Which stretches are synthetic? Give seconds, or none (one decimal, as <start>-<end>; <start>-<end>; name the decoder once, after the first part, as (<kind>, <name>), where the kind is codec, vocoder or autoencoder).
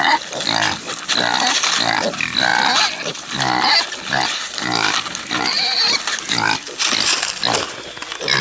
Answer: none